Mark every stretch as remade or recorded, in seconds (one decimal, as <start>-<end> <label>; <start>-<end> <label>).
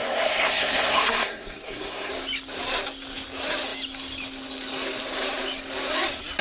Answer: 0.0-2.1 remade; 2.1-6.4 recorded